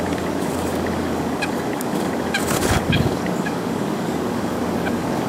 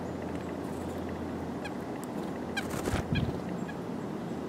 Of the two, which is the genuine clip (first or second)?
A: second